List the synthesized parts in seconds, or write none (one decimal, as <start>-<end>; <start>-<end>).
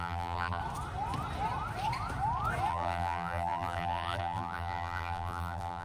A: 0.0-0.6; 2.7-5.8